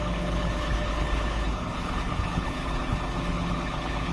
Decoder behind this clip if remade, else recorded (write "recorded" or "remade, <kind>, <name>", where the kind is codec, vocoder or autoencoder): remade, codec, HILCodec